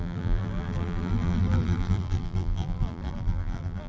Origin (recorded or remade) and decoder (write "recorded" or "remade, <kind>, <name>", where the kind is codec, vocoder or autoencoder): remade, vocoder, BigVGAN v2